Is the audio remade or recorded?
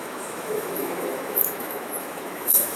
remade